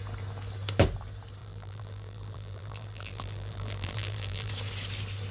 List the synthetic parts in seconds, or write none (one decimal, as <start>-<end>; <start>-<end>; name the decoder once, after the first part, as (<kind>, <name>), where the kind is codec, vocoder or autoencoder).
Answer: 1.4-4.5 (vocoder, BigVGAN v2)